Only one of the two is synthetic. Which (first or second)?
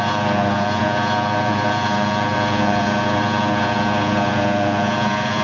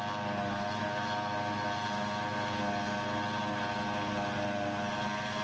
first